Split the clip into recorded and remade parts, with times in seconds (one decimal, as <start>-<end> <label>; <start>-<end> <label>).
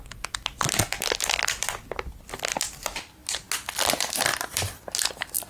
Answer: 0.0-5.5 recorded